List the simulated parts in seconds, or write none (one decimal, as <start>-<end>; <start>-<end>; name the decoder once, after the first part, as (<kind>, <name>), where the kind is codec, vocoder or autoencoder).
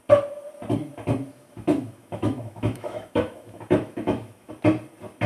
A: 1.3-4.5 (autoencoder, DAC-VAE)